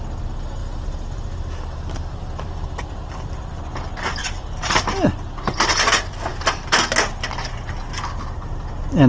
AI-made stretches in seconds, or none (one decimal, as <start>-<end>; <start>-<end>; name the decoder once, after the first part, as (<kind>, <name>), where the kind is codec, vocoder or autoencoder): 0.6-3.6 (vocoder, BigVGAN v2); 4.2-4.8